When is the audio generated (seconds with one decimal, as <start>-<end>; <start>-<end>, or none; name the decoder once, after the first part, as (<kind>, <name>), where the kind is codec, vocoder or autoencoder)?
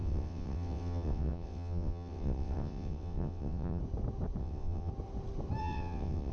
0.0-3.8 (vocoder, WaveNeXt); 4.4-4.9; 5.6-6.3